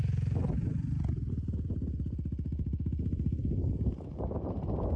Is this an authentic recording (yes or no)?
yes